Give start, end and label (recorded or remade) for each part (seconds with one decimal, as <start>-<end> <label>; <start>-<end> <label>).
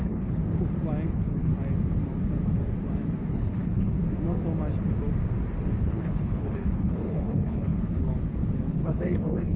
0.0-0.4 remade; 0.4-1.1 recorded; 1.1-1.5 remade; 1.5-3.3 recorded; 3.3-4.0 remade; 4.0-5.8 recorded; 5.8-7.7 remade; 7.7-8.7 recorded; 8.7-9.6 remade